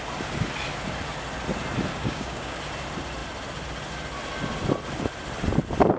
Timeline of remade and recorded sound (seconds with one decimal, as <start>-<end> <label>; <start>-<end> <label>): 0.0-1.9 recorded; 1.9-2.6 remade; 2.6-6.0 recorded